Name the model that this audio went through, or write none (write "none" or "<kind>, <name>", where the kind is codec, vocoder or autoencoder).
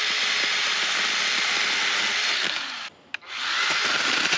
none